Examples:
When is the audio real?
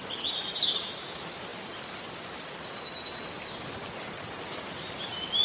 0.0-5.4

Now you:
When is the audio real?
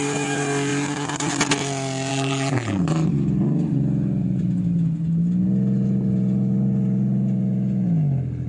0.0-2.1; 2.8-8.5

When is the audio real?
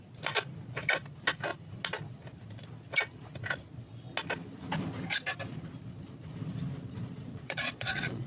0.0-7.3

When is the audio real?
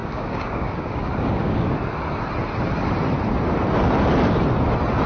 1.7-5.1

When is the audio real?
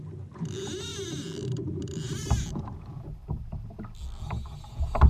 0.0-0.9; 3.7-5.1